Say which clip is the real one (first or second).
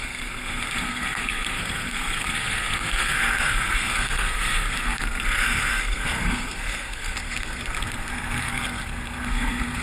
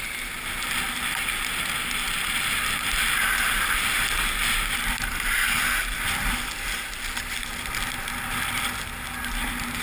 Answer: second